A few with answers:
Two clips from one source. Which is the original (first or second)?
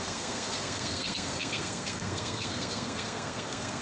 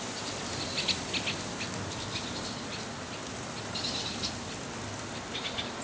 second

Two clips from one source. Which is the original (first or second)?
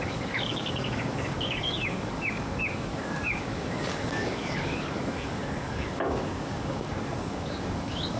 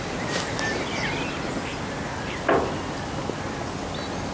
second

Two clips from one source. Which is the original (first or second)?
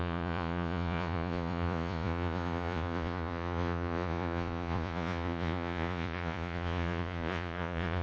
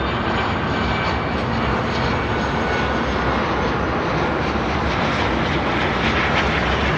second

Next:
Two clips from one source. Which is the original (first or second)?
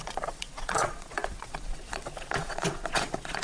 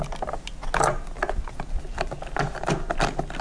second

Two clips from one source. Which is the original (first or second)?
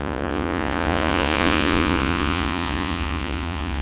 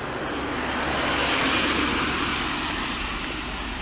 second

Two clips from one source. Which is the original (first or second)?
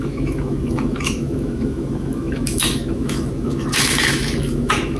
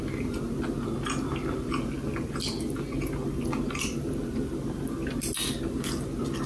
second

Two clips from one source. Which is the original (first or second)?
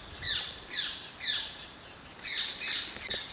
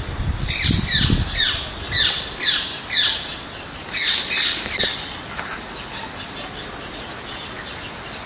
second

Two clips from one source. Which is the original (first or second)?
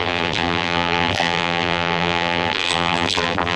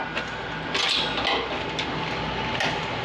second